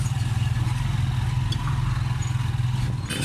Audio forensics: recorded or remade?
recorded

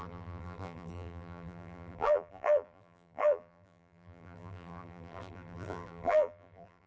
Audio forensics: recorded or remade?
remade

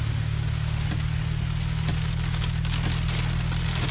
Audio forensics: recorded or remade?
recorded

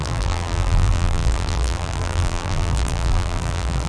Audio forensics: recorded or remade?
remade